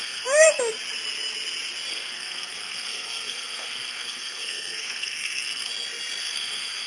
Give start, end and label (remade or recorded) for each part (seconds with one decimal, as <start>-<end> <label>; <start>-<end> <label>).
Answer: 0.0-0.6 remade; 0.6-1.9 recorded; 1.9-5.7 remade; 5.7-6.2 recorded; 6.2-6.9 remade